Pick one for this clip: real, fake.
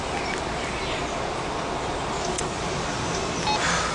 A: real